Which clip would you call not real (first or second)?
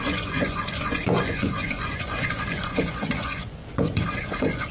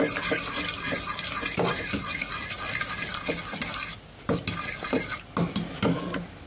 first